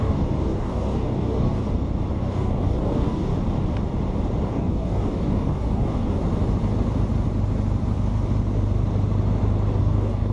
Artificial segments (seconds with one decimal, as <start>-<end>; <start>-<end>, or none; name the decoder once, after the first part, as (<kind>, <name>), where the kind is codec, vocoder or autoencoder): 0.0-1.6 (codec, DAC); 2.1-3.3; 4.5-6.2; 9.8-10.3